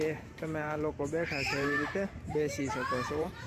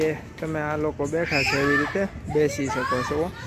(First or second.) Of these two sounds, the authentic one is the second